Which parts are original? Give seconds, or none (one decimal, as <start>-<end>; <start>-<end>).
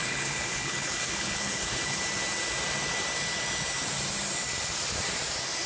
2.0-5.7